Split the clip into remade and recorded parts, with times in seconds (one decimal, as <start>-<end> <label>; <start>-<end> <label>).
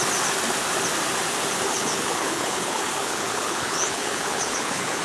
0.0-1.7 recorded; 1.7-5.0 remade